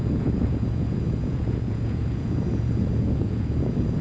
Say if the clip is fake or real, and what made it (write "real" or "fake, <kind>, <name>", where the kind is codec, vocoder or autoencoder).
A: fake, vocoder, Vocos